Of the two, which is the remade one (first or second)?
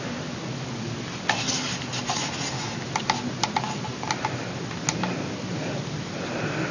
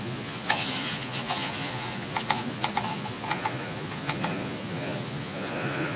second